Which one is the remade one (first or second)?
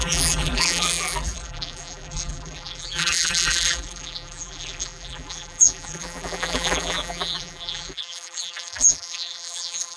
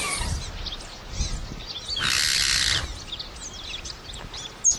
first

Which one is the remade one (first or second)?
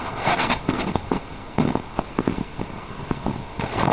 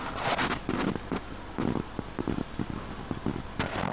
first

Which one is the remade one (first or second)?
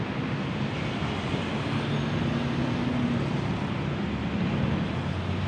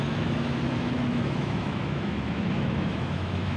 second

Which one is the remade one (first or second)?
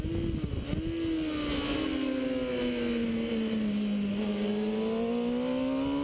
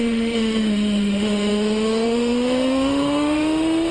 second